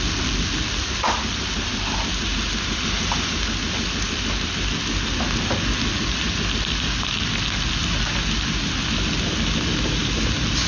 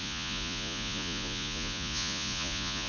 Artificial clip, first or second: second